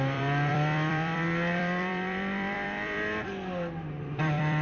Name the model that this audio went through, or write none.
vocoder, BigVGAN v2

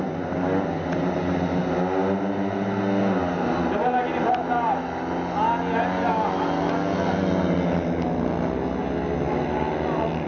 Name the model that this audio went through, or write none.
none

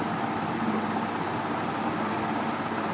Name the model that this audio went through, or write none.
none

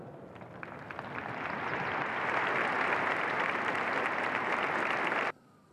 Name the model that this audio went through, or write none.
none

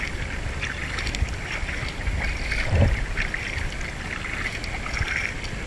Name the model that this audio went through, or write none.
none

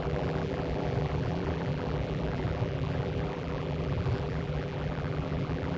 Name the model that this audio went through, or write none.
vocoder, BigVGAN v2